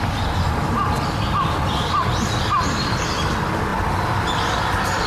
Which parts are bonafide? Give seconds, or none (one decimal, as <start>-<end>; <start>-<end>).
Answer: 0.0-5.1